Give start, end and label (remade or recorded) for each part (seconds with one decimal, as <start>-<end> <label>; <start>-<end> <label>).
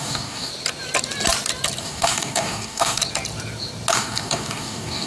0.0-0.5 remade; 0.5-1.8 recorded; 1.8-3.0 remade; 3.0-3.9 recorded; 3.9-5.1 remade